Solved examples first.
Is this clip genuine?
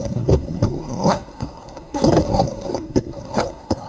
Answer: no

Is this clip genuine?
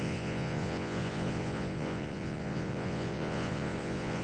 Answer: no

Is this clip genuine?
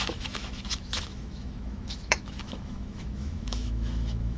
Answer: no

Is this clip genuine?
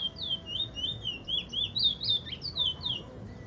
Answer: yes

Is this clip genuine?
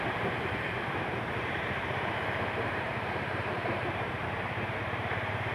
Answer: no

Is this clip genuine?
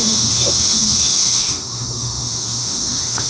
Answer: no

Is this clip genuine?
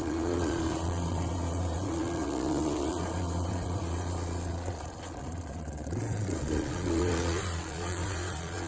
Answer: no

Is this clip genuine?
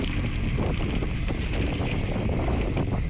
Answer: yes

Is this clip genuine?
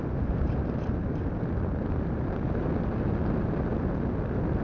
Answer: yes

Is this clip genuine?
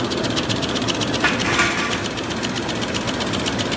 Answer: yes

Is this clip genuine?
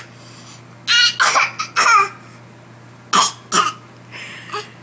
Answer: yes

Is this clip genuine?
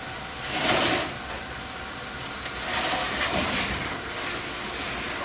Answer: yes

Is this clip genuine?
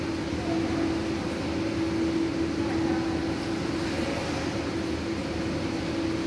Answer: yes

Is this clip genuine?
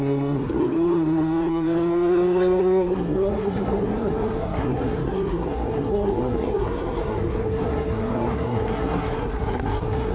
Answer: no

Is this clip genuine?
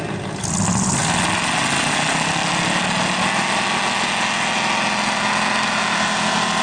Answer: yes